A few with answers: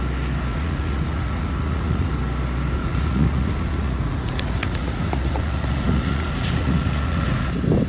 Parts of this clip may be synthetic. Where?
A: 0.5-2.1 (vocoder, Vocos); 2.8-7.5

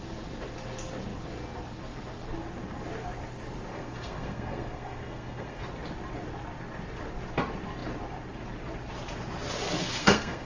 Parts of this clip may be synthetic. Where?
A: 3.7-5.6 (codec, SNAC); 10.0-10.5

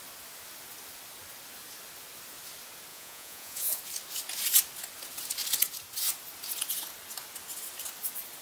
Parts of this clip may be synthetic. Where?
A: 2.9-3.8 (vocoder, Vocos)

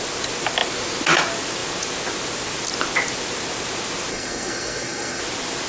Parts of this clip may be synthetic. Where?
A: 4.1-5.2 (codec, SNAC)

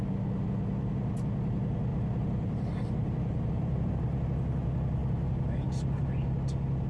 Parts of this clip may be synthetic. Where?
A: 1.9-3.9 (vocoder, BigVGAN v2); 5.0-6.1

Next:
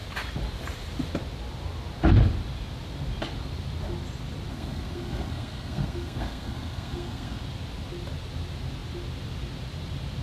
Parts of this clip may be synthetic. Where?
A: 4.5-7.4 (codec, SNAC)